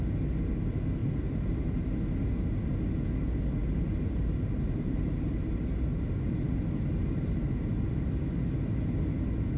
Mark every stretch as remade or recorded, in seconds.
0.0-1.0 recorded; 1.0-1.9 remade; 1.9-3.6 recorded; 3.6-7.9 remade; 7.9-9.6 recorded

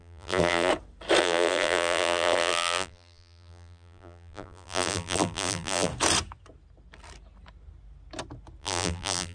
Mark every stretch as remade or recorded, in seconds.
0.0-0.7 remade; 0.7-1.2 recorded; 1.2-5.9 remade; 5.9-8.6 recorded; 8.6-9.3 remade

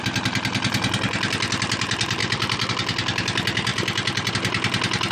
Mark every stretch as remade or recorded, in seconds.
0.0-2.2 recorded; 2.2-2.7 remade; 2.7-3.7 recorded; 3.7-4.3 remade; 4.3-5.1 recorded

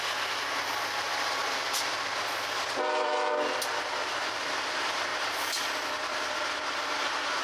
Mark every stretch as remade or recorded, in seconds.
0.0-1.4 recorded; 1.4-3.1 remade; 3.1-5.1 recorded; 5.1-6.8 remade; 6.8-7.4 recorded